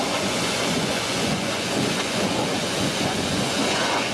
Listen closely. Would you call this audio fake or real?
fake